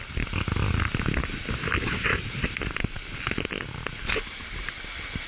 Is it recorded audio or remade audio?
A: recorded